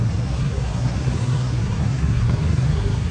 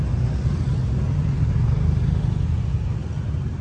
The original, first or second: second